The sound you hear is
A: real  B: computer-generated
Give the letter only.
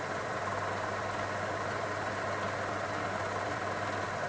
A